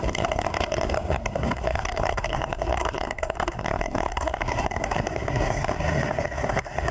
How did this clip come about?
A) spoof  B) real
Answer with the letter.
A